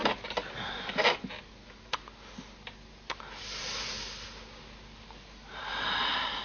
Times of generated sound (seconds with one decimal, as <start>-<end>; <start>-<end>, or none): none